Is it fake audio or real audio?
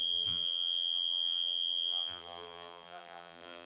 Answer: fake